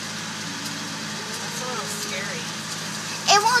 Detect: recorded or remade recorded